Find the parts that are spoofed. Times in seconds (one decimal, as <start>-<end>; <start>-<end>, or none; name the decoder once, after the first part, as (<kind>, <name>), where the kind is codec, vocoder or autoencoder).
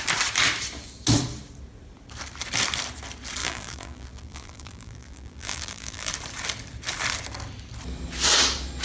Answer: 3.4-6.1 (vocoder, BigVGAN v2)